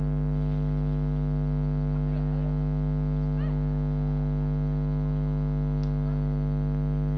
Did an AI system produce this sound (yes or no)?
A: no